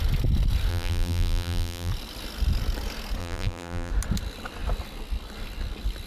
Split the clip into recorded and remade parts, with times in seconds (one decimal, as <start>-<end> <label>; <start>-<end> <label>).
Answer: 0.0-0.7 recorded; 0.7-1.9 remade; 1.9-3.2 recorded; 3.2-3.9 remade; 3.9-6.1 recorded